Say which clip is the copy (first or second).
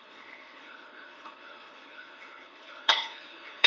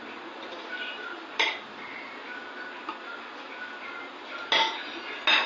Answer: first